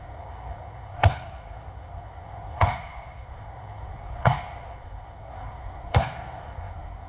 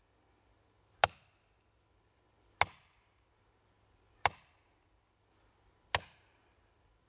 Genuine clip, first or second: second